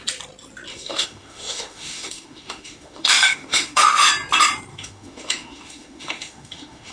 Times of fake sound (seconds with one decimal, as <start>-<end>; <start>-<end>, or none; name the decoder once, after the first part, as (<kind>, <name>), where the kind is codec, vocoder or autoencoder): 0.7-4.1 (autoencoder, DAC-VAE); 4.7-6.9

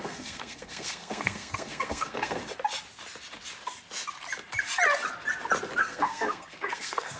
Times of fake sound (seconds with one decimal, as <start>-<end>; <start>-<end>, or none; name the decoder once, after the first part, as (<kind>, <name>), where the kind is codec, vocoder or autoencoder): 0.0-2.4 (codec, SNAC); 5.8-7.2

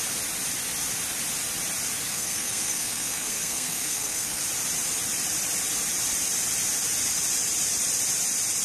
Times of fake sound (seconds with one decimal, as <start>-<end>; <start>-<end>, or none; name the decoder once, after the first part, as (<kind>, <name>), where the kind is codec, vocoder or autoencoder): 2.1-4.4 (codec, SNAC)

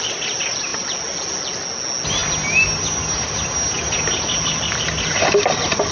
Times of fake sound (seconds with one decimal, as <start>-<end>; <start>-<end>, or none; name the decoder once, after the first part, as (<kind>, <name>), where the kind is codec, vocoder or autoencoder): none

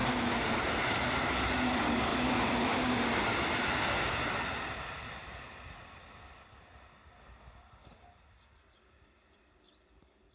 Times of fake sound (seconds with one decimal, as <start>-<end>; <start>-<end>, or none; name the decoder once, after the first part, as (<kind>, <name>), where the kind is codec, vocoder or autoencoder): 0.0-1.3 (vocoder, BigVGAN v2)

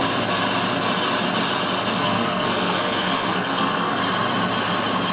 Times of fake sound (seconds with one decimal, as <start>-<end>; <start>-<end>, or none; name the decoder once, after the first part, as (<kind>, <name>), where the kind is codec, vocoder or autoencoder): 2.0-4.0 (codec, SNAC)

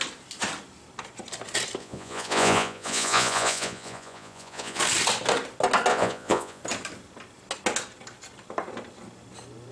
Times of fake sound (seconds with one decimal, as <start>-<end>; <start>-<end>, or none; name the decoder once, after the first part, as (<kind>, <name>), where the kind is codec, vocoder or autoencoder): 1.8-4.8 (vocoder, Vocos); 5.9-6.6